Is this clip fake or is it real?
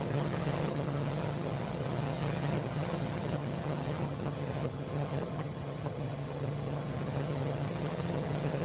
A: fake